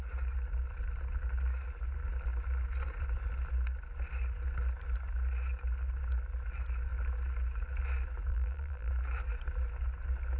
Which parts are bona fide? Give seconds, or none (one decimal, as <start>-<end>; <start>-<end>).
0.0-8.3; 8.9-10.4